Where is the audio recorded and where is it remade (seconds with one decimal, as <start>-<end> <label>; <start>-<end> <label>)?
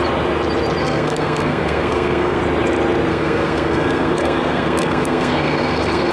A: 0.0-0.8 recorded; 0.8-2.4 remade; 2.4-3.1 recorded; 3.1-6.1 remade